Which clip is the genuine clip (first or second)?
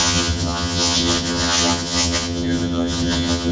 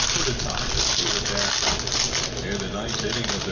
second